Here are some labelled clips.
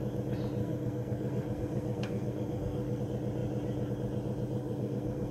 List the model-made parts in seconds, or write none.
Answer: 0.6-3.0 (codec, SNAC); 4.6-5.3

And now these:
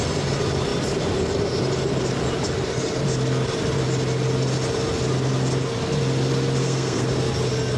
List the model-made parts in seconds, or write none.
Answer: 6.6-7.1 (codec, SNAC)